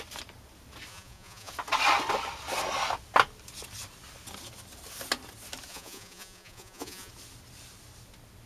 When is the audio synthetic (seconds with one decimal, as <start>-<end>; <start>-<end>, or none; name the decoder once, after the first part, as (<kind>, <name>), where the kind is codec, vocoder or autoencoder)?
0.9-1.5 (vocoder, Vocos); 5.7-7.1